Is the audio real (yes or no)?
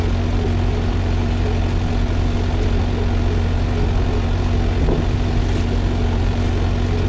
yes